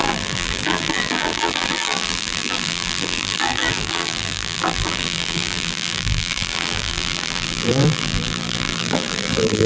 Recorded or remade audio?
remade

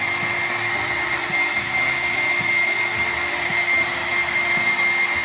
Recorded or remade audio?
recorded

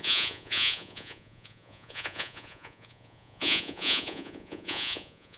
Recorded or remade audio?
remade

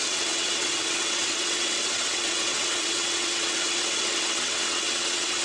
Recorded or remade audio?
remade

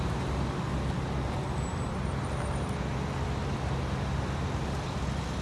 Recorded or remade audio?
recorded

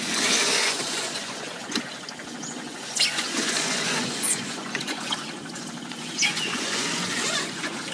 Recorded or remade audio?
remade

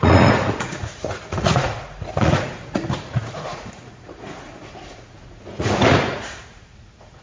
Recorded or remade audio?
remade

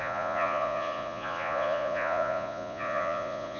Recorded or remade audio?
remade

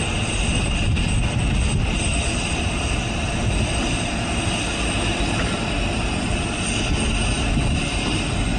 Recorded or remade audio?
recorded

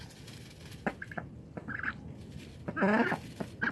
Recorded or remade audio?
recorded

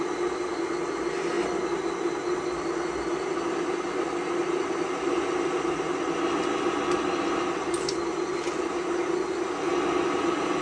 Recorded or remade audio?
recorded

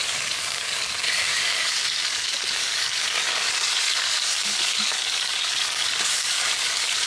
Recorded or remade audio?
remade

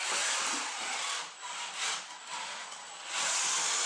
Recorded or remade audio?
recorded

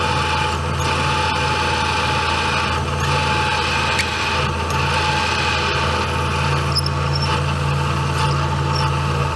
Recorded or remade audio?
recorded